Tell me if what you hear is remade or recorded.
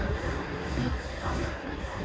remade